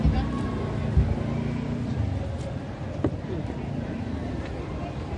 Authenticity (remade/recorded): recorded